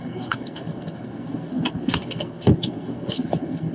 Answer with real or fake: fake